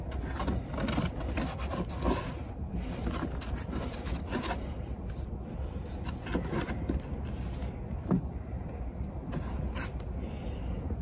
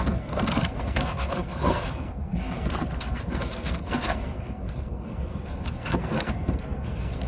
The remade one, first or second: second